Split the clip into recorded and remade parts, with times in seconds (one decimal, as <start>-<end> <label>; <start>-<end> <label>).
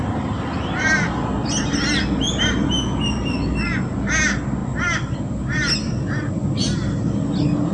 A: 0.0-7.7 recorded